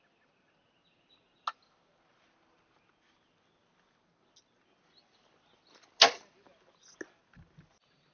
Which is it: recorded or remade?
recorded